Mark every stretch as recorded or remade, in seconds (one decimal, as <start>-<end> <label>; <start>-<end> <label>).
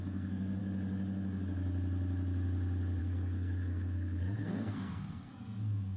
0.0-0.6 remade; 0.6-3.0 recorded; 3.0-6.0 remade